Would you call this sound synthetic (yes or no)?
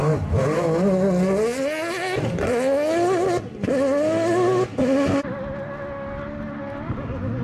no